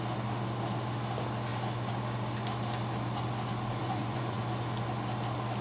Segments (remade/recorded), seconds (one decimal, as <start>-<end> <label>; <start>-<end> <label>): 0.0-3.8 recorded; 3.8-4.4 remade; 4.4-5.6 recorded